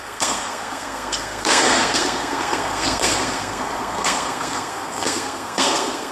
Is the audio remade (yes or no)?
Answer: yes